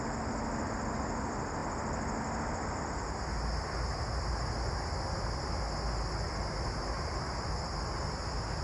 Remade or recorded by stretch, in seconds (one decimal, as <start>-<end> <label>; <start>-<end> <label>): 0.0-8.6 recorded